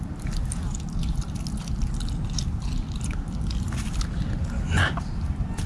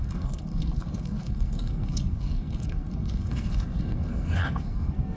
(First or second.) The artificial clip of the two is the second